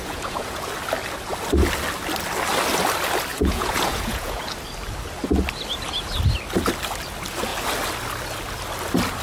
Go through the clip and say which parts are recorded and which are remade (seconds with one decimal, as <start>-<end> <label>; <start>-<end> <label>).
0.0-0.7 remade; 0.7-3.3 recorded; 3.3-4.4 remade; 4.4-9.2 recorded